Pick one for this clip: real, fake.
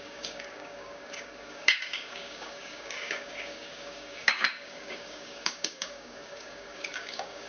fake